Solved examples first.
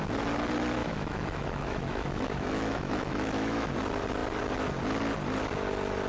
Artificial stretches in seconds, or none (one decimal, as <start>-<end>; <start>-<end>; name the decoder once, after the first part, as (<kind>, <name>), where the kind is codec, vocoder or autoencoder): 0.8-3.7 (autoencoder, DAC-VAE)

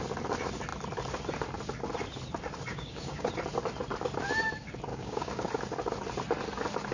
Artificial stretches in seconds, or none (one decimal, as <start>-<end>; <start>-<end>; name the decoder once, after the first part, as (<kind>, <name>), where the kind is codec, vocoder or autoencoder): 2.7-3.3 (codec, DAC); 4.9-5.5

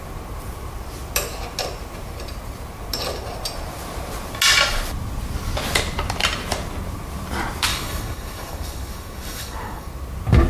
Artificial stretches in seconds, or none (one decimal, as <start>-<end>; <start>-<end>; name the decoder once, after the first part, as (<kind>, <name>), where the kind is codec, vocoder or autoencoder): 7.7-9.9 (codec, DAC)